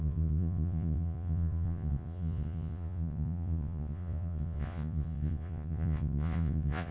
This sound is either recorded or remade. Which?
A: remade